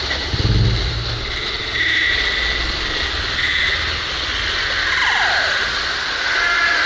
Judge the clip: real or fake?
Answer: real